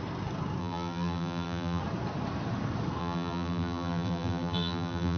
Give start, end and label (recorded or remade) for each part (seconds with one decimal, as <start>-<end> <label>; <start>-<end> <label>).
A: 0.0-0.6 recorded; 0.6-1.8 remade; 1.8-3.0 recorded; 3.0-5.2 remade